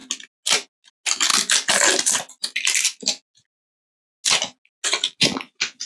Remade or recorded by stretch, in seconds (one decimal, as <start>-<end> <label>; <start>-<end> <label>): 0.0-5.9 recorded